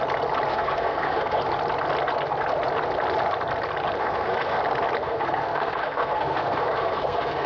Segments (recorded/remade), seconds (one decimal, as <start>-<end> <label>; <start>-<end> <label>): 0.0-0.5 recorded; 0.5-1.4 remade; 1.4-4.0 recorded; 4.0-4.6 remade; 4.6-5.0 recorded; 5.0-7.5 remade